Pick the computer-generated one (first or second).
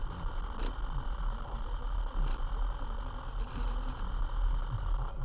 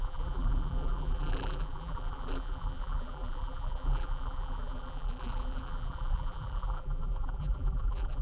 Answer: second